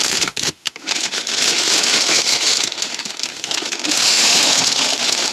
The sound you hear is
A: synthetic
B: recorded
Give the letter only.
A